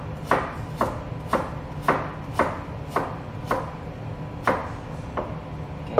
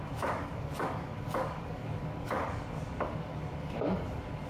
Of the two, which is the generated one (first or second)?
second